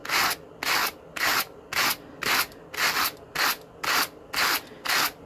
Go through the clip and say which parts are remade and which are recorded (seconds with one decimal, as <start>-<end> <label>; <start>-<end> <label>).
0.0-5.3 recorded